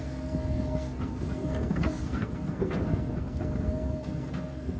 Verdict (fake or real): fake